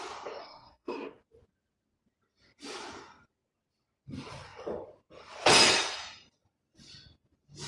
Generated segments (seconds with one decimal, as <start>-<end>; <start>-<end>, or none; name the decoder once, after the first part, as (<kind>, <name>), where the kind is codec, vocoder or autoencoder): 0.4-1.2 (codec, SNAC)